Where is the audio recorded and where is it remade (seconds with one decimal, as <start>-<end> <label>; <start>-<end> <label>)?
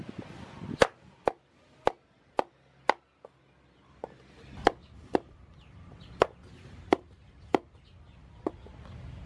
0.0-4.8 recorded; 4.8-8.4 remade; 8.4-9.3 recorded